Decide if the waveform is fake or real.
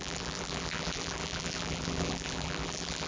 fake